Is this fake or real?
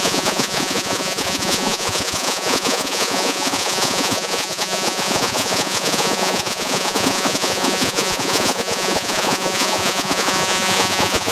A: fake